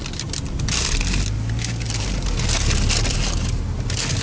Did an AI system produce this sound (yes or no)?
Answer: no